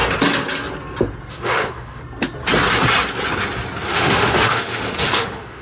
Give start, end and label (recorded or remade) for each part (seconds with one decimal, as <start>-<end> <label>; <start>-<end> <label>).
0.0-1.3 recorded; 1.3-2.0 remade; 2.0-3.9 recorded; 3.9-5.6 remade